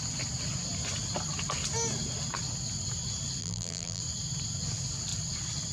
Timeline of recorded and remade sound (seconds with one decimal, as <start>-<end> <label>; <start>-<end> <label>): 0.0-3.4 recorded; 3.4-4.0 remade; 4.0-5.7 recorded